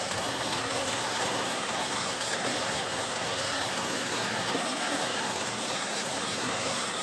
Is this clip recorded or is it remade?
remade